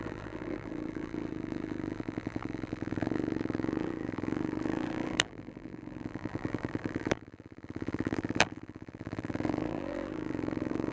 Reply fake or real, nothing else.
fake